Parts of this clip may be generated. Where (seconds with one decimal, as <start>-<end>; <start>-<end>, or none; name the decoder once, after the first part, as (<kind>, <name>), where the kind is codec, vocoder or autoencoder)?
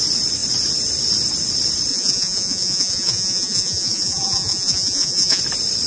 1.9-5.4 (vocoder, Vocos)